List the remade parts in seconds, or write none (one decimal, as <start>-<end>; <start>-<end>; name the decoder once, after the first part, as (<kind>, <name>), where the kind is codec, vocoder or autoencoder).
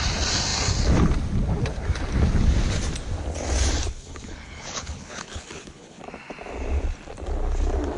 3.9-6.0 (codec, HILCodec)